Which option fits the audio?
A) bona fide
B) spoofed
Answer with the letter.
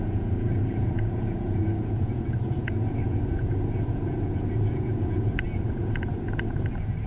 B